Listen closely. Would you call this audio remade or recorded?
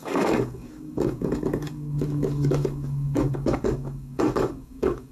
remade